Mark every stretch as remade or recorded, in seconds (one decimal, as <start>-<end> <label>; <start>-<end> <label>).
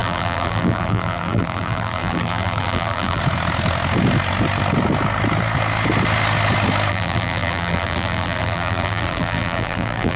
0.0-3.2 remade; 3.2-6.9 recorded; 6.9-10.2 remade